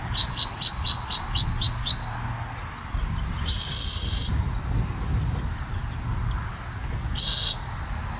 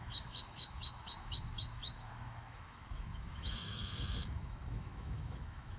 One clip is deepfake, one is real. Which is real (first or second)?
first